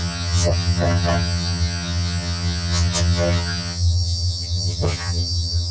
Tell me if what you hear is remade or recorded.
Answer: remade